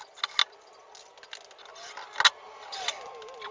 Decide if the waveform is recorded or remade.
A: recorded